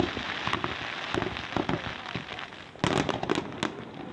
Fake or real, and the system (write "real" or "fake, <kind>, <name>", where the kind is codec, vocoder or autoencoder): real